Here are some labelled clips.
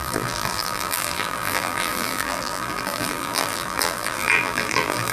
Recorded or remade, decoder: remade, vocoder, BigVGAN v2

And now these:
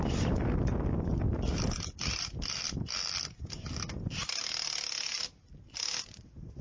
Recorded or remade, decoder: recorded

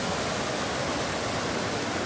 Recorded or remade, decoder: recorded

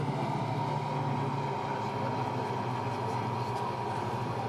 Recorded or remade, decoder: recorded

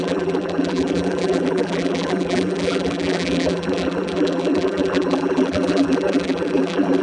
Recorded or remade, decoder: remade, vocoder, BigVGAN v2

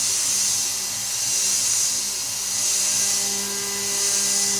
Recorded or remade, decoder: recorded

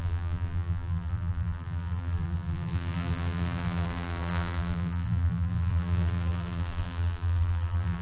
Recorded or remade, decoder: remade, vocoder, BigVGAN v2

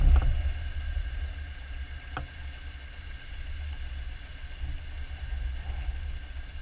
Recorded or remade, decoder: recorded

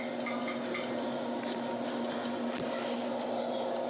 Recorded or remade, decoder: recorded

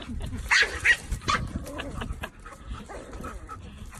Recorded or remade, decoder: remade, vocoder, BigVGAN v2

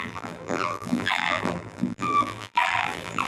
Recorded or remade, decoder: remade, vocoder, BigVGAN v2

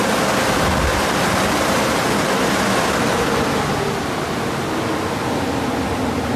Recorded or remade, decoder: recorded